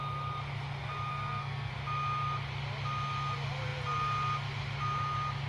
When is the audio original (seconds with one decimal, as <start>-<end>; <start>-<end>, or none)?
0.0-1.1; 1.7-5.5